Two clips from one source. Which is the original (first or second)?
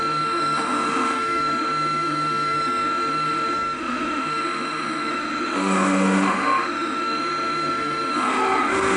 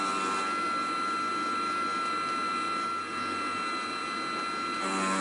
second